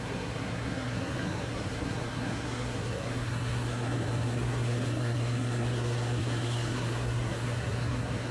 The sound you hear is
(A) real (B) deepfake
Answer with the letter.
B